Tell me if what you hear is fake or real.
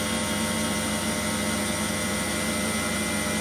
real